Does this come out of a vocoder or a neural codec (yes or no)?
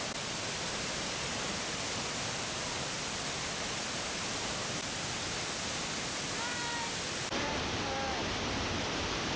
yes